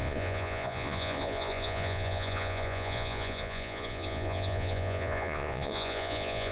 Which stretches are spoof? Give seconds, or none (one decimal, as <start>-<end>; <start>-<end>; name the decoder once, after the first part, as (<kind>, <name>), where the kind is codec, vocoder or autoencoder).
0.0-6.5 (vocoder, Vocos)